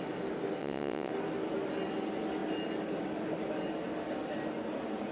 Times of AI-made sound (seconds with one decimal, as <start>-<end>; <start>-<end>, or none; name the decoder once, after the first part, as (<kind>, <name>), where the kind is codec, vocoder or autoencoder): 0.6-1.1 (vocoder, WaveNeXt)